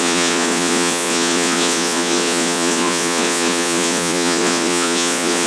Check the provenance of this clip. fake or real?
fake